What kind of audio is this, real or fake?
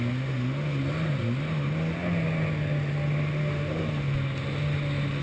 real